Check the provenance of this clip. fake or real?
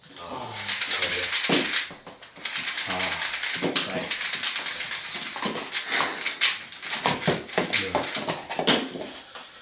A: real